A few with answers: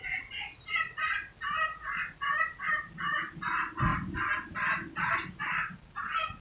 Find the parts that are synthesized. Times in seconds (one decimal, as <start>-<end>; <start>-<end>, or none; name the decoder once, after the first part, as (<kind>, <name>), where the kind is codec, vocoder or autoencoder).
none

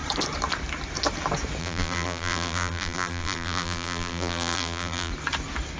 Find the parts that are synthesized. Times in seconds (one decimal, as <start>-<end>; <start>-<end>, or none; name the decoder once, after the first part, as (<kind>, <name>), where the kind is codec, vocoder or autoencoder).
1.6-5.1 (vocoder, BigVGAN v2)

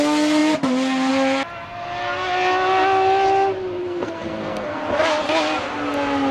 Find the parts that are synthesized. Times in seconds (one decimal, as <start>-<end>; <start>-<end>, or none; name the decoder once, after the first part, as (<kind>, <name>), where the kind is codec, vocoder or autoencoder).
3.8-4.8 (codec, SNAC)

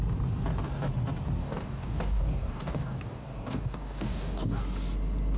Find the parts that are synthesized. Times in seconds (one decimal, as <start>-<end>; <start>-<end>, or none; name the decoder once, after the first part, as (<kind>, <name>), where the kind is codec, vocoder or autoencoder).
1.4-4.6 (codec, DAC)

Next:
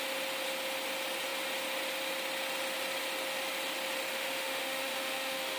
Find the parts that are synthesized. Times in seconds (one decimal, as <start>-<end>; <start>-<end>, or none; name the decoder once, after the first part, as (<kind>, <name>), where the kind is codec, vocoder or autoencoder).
4.1-5.6 (autoencoder, DAC-VAE)